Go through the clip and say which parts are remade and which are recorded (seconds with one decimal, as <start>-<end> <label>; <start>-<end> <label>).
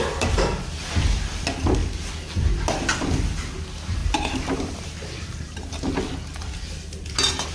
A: 0.0-4.0 recorded; 4.0-5.9 remade; 5.9-7.5 recorded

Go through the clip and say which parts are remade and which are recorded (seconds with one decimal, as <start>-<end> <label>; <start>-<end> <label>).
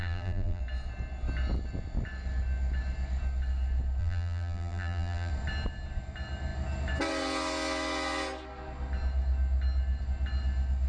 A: 0.0-0.6 remade; 0.6-4.0 recorded; 4.0-5.3 remade; 5.3-10.9 recorded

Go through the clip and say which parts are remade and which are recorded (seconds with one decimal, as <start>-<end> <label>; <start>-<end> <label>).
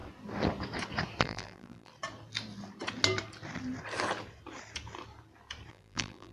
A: 0.0-1.2 recorded; 1.2-1.9 remade; 1.9-5.7 recorded; 5.7-6.3 remade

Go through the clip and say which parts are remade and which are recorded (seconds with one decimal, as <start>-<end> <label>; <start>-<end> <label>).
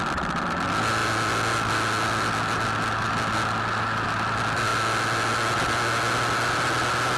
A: 0.0-7.2 recorded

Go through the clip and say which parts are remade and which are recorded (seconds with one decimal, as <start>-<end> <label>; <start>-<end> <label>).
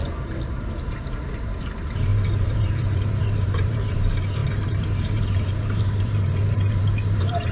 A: 0.0-7.5 remade